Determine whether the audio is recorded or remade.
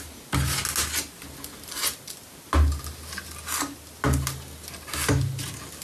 recorded